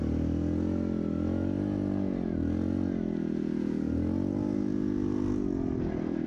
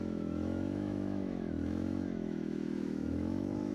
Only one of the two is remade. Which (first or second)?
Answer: second